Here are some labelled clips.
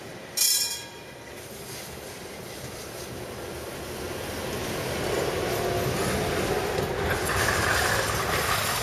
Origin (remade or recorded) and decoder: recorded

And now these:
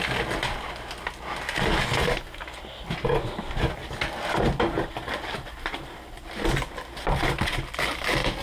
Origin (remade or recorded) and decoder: recorded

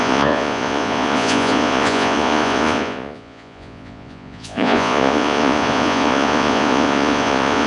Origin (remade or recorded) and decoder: remade, vocoder, Vocos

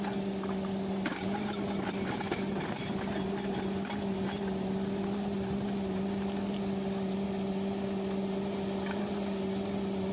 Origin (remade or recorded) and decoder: recorded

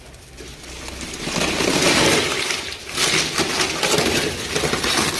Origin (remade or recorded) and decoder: recorded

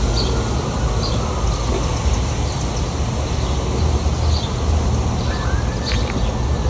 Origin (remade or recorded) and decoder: recorded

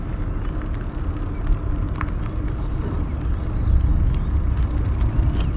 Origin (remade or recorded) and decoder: recorded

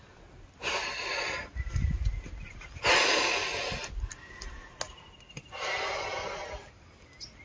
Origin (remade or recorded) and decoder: recorded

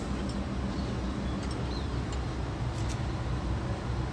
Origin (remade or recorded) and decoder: recorded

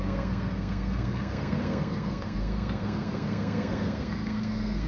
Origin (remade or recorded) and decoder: remade, codec, SNAC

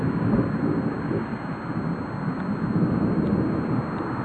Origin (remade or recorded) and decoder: recorded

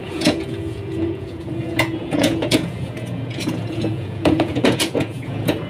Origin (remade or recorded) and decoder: remade, vocoder, Vocos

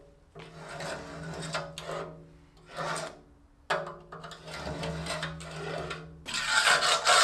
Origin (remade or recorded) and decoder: recorded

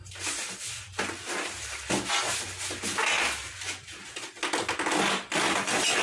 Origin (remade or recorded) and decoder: recorded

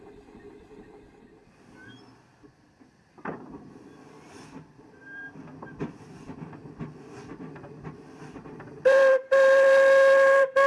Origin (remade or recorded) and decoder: remade, vocoder, BigVGAN v2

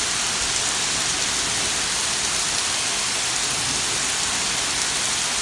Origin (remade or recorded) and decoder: recorded